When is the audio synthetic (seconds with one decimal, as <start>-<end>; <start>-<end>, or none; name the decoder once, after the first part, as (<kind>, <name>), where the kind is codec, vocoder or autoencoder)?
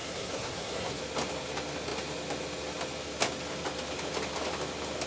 0.0-1.0 (codec, SNAC)